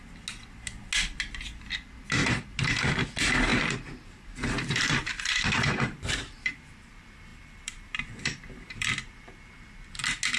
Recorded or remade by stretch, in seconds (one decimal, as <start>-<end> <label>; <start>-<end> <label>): 0.0-3.5 recorded; 3.5-6.5 remade; 6.5-7.3 recorded; 7.3-9.2 remade; 9.2-10.4 recorded